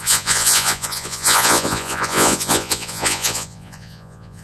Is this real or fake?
fake